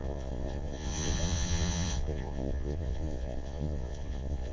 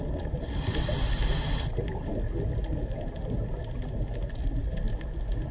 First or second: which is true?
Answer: second